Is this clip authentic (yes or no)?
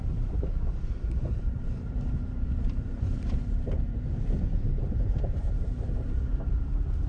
no